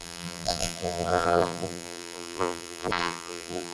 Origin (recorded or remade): remade